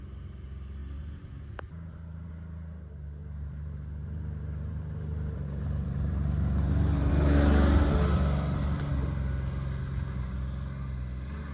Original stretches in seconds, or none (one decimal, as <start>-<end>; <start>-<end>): 0.0-0.8; 2.3-3.2; 7.1-11.5